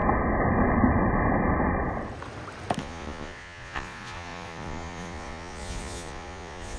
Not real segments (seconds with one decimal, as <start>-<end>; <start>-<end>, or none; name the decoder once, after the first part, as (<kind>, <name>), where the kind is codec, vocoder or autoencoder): 2.8-6.8 (vocoder, Vocos)